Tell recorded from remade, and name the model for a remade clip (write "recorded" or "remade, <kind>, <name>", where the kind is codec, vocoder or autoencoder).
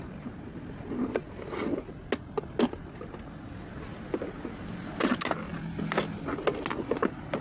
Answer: recorded